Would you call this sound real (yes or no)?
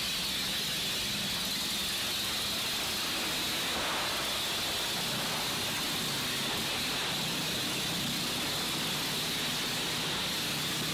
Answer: yes